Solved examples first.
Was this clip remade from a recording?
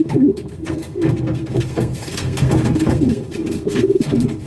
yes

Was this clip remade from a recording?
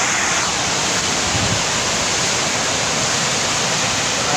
yes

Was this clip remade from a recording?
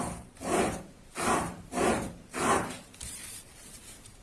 yes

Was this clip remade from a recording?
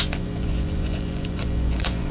yes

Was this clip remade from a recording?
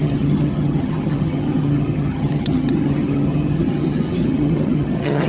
yes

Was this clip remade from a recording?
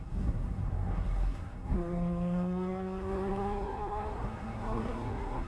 yes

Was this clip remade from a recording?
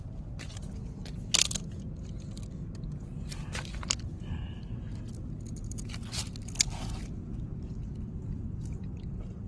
no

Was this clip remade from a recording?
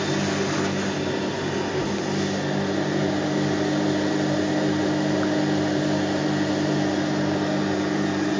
no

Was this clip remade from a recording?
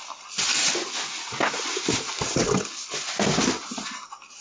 no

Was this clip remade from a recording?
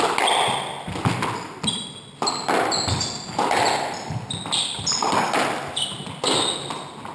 no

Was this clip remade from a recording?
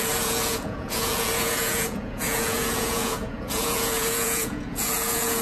yes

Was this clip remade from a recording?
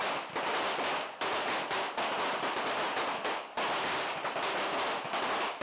no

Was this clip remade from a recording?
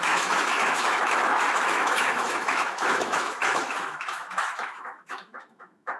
yes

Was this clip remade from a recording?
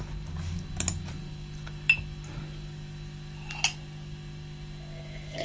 no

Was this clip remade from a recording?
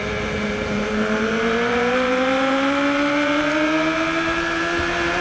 yes